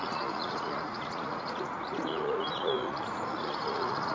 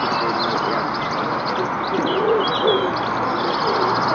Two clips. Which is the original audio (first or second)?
second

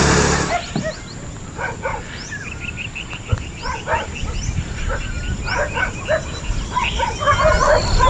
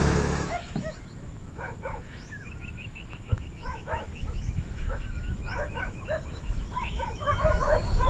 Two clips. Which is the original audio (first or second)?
first